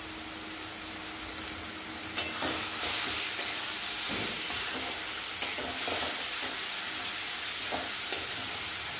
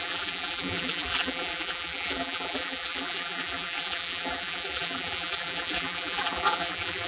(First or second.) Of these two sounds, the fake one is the second